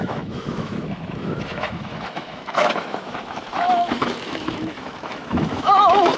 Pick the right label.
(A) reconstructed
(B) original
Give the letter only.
A